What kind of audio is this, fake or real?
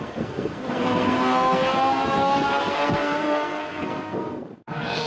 fake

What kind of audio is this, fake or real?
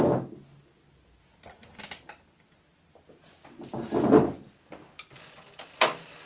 real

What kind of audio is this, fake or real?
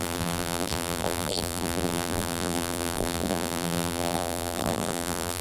fake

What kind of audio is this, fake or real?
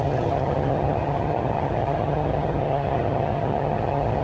fake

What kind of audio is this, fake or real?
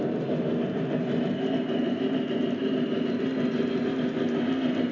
real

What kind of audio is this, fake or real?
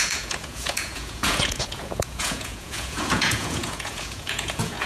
fake